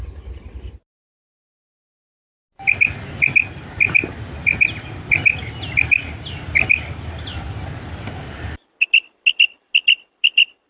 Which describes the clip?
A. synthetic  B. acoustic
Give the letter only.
B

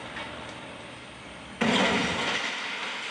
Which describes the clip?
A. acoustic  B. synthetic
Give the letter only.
A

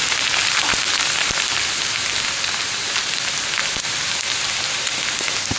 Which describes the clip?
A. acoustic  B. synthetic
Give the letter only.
A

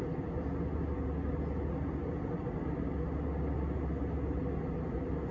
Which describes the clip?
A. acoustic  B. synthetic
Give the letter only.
A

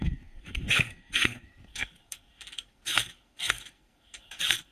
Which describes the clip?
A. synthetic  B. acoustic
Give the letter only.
A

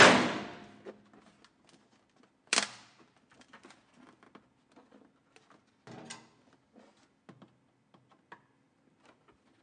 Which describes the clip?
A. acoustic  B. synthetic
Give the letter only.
A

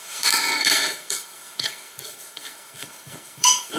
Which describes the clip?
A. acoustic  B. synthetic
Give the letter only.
B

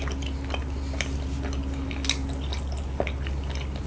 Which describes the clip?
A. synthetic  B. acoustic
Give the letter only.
B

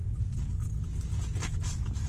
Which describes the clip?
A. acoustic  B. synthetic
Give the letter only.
A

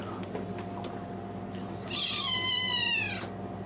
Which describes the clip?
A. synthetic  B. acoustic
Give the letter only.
B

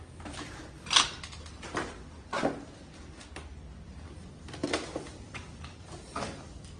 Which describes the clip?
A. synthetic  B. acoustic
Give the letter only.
B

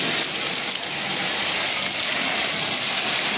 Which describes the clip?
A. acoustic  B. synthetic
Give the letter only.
A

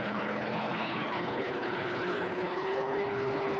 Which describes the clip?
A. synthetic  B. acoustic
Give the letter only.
A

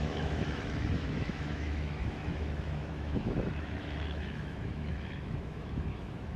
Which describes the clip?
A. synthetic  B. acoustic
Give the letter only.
A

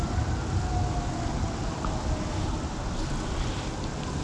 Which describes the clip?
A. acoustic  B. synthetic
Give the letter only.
A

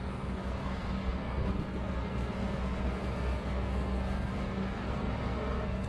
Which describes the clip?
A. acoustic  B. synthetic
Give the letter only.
B